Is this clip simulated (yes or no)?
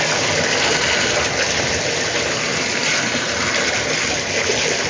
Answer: no